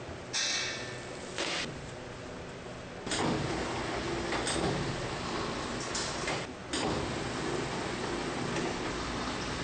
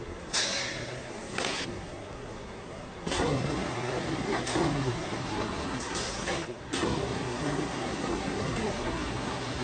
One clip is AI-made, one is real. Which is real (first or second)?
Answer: first